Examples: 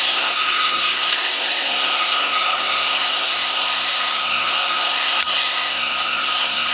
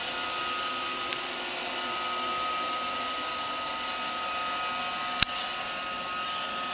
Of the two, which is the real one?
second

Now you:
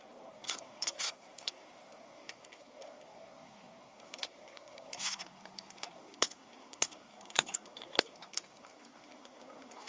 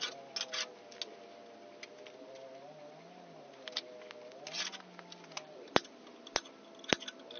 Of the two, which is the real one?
second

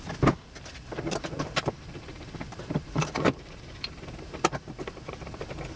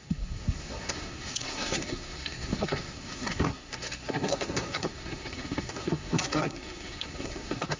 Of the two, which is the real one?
first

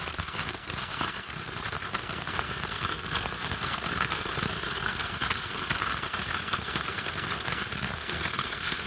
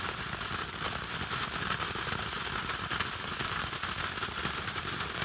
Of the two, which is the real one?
second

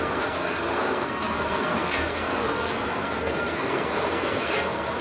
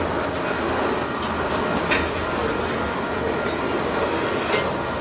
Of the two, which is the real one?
second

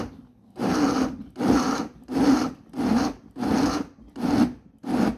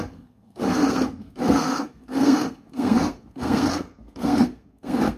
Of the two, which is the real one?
first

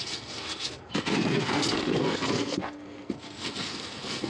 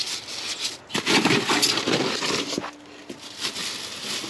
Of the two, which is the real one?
second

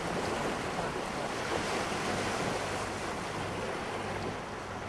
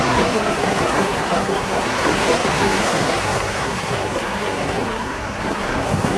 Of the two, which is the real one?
first